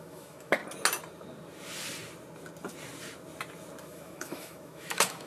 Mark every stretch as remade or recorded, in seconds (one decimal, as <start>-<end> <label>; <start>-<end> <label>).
0.0-0.6 remade; 0.6-3.8 recorded; 3.8-5.3 remade